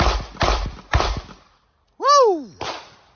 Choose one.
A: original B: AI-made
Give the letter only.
A